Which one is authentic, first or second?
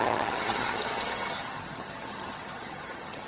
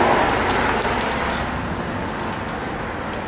second